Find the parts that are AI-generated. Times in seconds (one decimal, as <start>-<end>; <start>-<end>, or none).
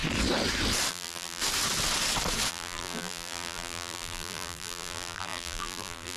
0.9-1.4; 2.5-6.2